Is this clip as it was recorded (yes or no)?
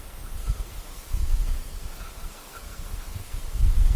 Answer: no